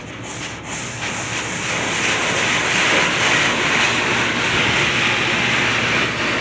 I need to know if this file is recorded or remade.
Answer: recorded